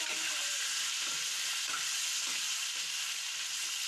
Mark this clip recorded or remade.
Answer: recorded